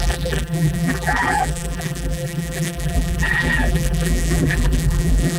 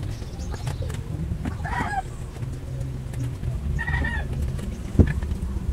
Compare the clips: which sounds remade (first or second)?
first